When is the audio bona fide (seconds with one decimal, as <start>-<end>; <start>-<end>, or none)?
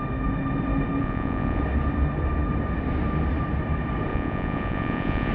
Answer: 0.0-1.0; 1.6-4.1